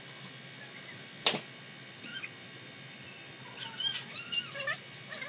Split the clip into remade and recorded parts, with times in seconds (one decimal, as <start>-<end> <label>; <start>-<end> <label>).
0.0-2.1 recorded; 2.1-4.4 remade; 4.4-5.3 recorded